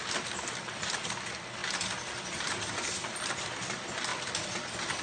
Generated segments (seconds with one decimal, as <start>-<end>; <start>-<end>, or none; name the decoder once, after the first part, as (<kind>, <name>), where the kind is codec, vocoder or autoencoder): none